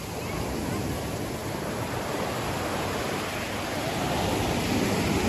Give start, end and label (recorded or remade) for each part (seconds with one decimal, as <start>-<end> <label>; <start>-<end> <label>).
0.0-1.4 recorded; 1.4-3.0 remade; 3.0-5.3 recorded